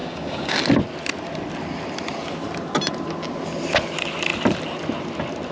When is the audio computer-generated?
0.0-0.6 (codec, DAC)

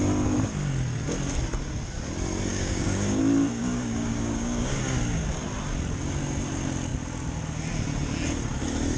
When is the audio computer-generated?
2.5-3.2 (codec, DAC); 3.6-4.8

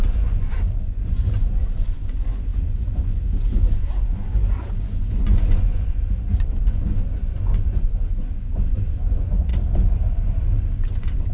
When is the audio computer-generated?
0.0-9.5 (vocoder, Vocos); 10.7-11.3

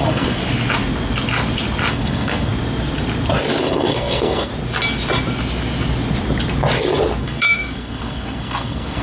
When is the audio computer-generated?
0.0-0.4 (codec, SNAC); 1.9-2.5; 3.6-4.5; 7.2-9.0

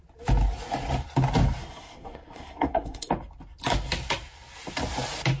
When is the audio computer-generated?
1.6-3.1 (codec, SNAC)

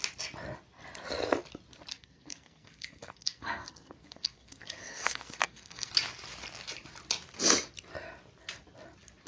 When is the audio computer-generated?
1.9-5.9 (codec, SNAC)

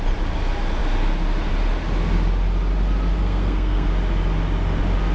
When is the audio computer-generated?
3.2-3.9 (codec, SNAC)

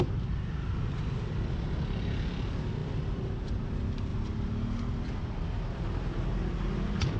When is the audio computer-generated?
none